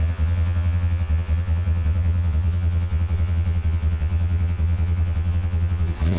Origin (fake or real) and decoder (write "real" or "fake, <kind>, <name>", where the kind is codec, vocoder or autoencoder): fake, vocoder, Vocos